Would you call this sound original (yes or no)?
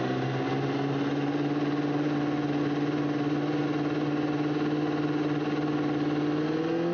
yes